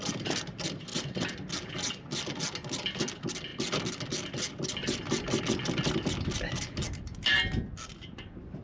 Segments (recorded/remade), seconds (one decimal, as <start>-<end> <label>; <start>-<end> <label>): 0.0-8.6 recorded